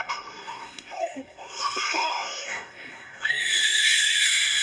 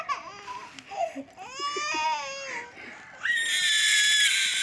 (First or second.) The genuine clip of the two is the second